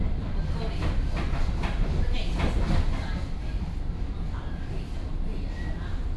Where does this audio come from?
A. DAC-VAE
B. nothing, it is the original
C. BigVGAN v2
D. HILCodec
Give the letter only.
B